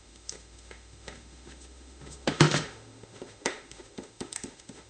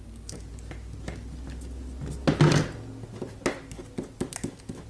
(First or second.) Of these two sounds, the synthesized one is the first